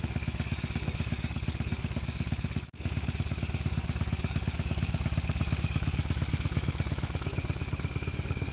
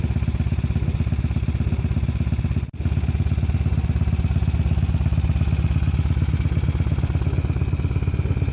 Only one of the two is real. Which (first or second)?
second